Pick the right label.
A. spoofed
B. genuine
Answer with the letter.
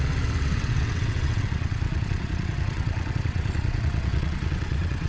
A